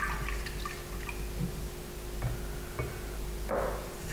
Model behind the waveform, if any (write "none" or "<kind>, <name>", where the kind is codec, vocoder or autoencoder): none